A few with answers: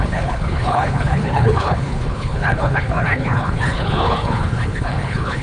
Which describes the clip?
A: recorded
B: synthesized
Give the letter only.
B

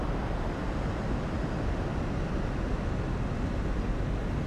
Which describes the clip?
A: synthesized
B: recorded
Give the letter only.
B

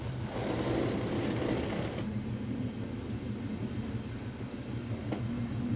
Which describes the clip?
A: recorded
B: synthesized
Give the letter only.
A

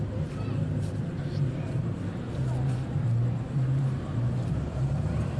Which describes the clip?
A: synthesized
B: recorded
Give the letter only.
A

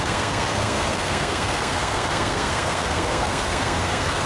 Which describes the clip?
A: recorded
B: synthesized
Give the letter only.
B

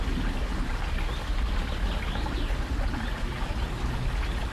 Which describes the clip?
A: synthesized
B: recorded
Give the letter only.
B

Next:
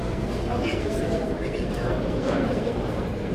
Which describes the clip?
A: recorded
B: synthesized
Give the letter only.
B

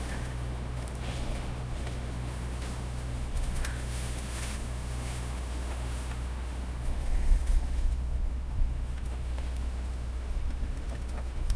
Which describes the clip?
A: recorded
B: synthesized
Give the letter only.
B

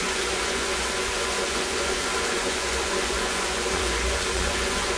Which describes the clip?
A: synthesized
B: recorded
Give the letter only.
A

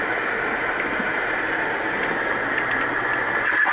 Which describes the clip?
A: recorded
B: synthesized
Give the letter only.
A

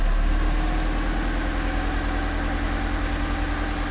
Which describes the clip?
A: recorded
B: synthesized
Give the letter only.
A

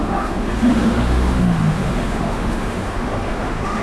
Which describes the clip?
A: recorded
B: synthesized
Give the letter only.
B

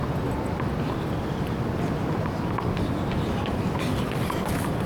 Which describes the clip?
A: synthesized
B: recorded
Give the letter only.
B